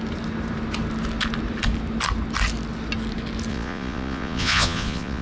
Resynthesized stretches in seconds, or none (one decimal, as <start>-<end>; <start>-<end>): 3.5-5.2